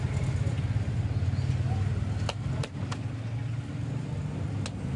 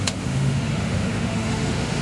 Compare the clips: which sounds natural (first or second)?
first